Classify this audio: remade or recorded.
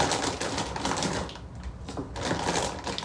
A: recorded